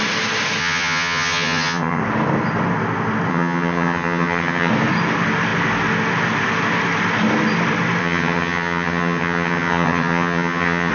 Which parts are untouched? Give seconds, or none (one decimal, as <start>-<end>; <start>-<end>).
0.0-0.6; 2.0-3.3; 4.7-8.0